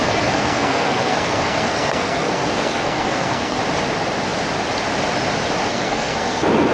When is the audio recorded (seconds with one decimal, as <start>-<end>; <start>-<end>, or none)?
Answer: 3.6-5.7